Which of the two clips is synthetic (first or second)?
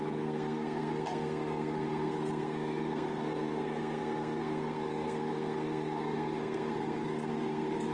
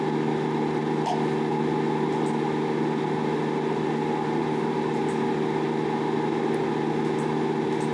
first